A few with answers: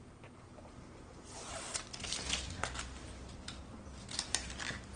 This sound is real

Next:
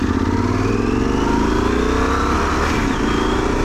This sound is real